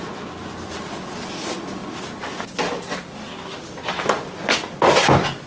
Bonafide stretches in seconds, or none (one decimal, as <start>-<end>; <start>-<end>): 0.0-0.4; 0.9-5.5